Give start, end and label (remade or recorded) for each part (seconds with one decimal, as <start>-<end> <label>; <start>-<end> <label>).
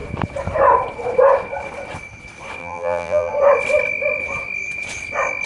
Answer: 0.0-2.6 recorded; 2.6-3.3 remade; 3.3-5.5 recorded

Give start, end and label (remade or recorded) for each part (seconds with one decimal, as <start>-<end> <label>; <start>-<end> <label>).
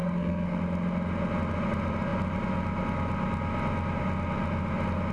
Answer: 0.0-0.6 remade; 0.6-5.1 recorded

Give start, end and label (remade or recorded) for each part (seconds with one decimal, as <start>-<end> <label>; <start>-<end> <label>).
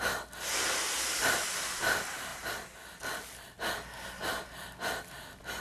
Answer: 0.0-5.6 recorded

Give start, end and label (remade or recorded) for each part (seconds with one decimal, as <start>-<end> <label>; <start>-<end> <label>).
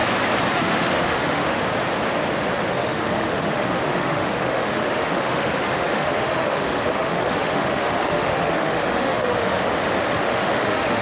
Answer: 0.0-0.5 recorded; 0.5-1.6 remade; 1.6-2.7 recorded; 2.7-9.6 remade; 9.6-10.2 recorded; 10.2-11.0 remade